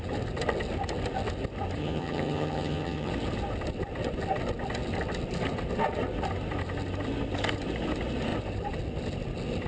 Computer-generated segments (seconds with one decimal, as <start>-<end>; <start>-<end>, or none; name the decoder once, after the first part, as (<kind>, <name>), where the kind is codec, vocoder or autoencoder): 1.8-3.1 (vocoder, HiFi-GAN)